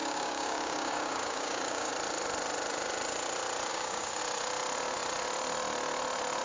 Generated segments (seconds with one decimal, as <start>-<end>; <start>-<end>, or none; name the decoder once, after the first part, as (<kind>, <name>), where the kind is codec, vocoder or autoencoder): 0.0-1.9 (codec, DAC); 3.7-4.2